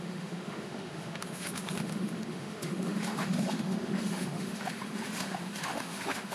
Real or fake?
fake